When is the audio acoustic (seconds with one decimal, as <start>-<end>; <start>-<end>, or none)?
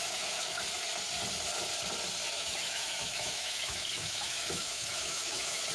0.6-2.2